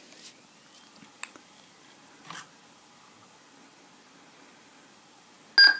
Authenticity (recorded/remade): recorded